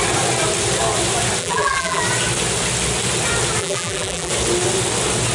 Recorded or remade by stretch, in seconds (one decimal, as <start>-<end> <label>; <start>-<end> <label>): 0.0-1.4 recorded; 1.4-2.0 remade; 2.0-3.6 recorded; 3.6-4.3 remade; 4.3-5.3 recorded